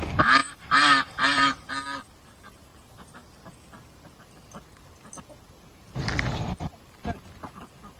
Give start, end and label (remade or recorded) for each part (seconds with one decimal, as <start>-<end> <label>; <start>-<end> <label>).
0.0-0.4 recorded; 0.4-1.7 remade; 1.7-8.0 recorded